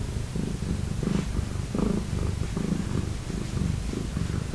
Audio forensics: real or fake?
real